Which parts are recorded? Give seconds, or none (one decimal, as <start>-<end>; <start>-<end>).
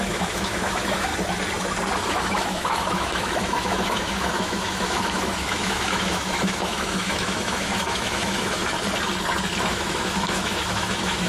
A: 1.1-2.1; 8.6-9.7